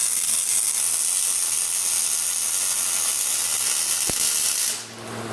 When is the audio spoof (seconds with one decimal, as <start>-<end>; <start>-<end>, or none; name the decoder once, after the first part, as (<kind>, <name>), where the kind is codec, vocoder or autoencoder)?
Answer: 0.0-0.8 (codec, SNAC)